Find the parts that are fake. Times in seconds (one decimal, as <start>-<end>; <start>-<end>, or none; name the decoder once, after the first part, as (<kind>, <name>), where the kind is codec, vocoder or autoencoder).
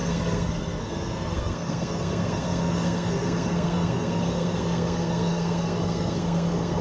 0.0-6.8 (codec, SNAC)